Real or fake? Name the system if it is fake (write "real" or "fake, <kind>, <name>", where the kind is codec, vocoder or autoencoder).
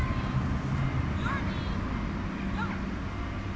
real